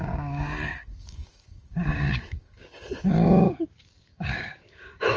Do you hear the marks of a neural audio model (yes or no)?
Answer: yes